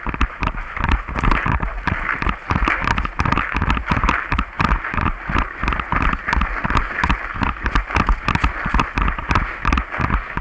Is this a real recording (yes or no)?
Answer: yes